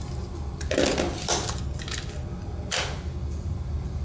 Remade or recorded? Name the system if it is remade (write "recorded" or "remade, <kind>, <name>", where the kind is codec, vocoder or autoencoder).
remade, vocoder, BigVGAN v2